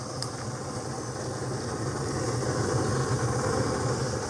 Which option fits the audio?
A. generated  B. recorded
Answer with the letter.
B